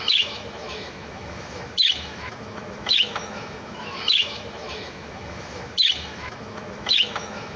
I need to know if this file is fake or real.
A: fake